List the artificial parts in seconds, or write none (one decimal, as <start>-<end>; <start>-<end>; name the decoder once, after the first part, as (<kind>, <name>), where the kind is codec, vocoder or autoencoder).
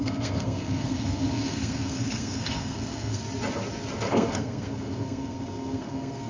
0.0-3.2 (codec, SNAC); 4.1-6.3